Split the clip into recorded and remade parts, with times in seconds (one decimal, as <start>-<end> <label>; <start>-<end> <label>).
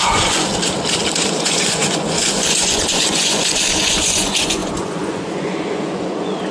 0.0-0.5 remade; 0.5-1.3 recorded; 1.3-6.5 remade